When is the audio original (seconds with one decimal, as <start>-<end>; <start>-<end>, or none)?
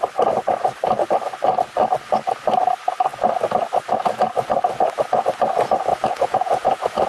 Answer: 0.0-5.9